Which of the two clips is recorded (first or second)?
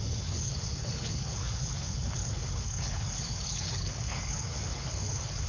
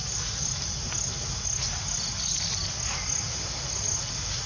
second